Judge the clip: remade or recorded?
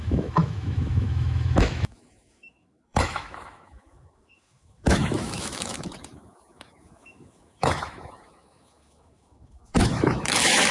remade